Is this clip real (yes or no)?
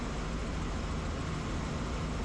yes